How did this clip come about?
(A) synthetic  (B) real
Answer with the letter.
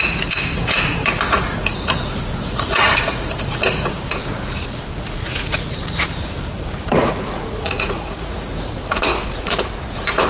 A